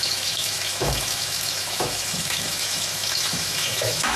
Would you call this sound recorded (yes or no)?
no